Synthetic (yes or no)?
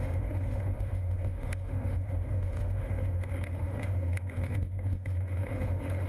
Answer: yes